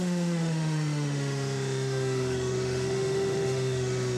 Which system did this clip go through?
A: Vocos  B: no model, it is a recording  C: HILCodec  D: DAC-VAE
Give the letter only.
D